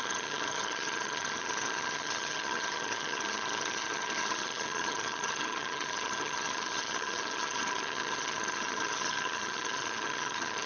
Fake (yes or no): yes